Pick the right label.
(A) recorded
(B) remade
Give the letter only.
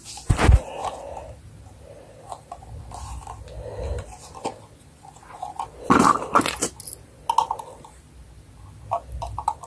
A